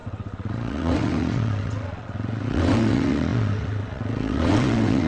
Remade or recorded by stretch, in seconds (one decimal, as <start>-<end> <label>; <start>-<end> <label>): 0.0-5.1 remade

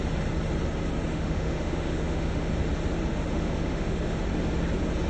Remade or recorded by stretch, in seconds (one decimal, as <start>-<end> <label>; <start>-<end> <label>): 0.0-1.1 recorded; 1.1-2.5 remade; 2.5-3.1 recorded; 3.1-4.2 remade; 4.2-5.1 recorded

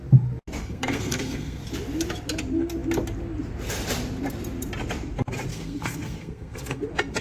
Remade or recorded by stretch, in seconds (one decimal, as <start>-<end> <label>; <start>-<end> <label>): 0.0-0.6 recorded; 0.6-1.6 remade; 1.6-5.5 recorded; 5.5-6.8 remade; 6.8-7.2 recorded